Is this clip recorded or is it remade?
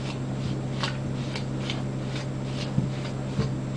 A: recorded